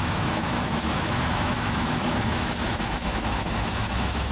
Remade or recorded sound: remade